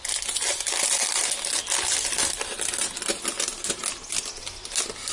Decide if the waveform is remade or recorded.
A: recorded